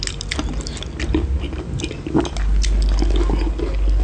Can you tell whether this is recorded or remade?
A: recorded